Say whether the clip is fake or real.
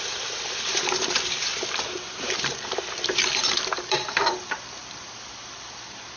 fake